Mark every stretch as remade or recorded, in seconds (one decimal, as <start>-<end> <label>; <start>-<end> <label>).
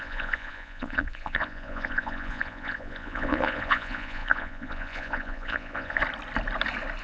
0.0-6.0 remade; 6.0-7.0 recorded